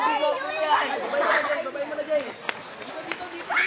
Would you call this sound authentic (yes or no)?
yes